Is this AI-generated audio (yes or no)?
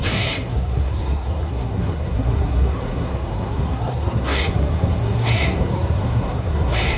yes